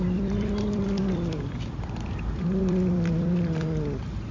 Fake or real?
fake